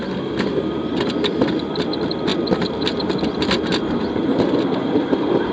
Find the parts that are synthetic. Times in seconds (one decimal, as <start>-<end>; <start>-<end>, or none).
none